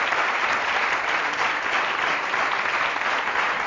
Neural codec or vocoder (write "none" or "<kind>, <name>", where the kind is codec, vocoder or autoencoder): none